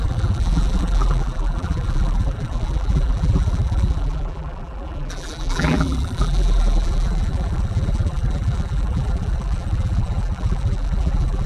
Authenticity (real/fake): fake